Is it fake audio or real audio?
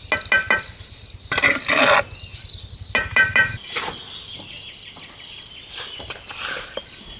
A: real